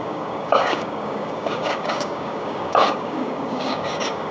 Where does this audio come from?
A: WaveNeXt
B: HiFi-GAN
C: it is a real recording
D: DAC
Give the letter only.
D